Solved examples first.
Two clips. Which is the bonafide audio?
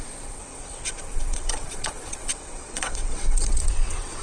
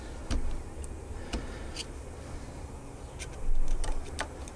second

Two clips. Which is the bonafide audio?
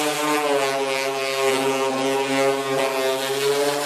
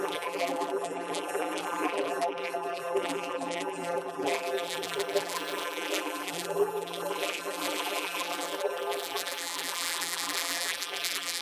first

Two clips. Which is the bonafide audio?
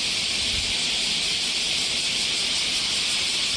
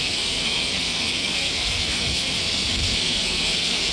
first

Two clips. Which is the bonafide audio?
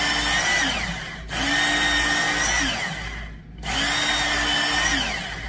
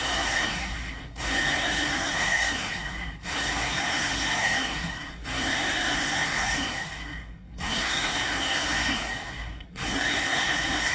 first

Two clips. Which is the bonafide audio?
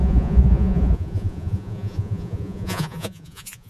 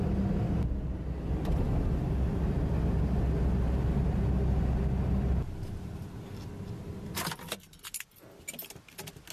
second